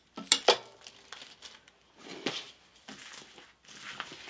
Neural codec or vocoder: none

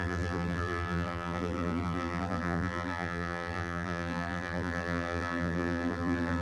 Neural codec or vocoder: vocoder, BigVGAN v2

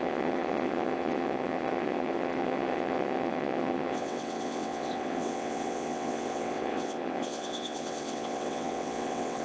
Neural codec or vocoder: vocoder, WaveNeXt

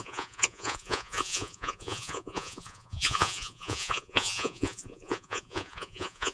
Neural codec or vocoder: vocoder, Vocos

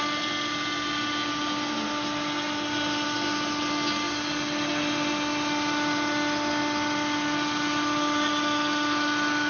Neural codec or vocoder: none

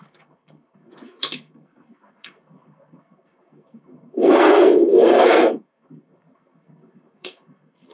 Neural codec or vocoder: codec, SNAC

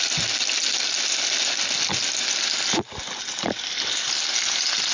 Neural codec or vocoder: none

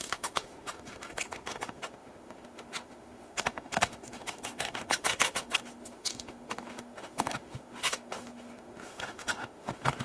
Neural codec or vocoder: autoencoder, DAC-VAE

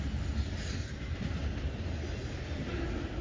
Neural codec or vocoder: none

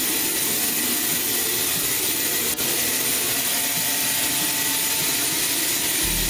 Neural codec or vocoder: none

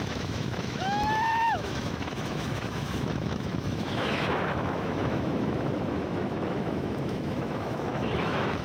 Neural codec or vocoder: autoencoder, DAC-VAE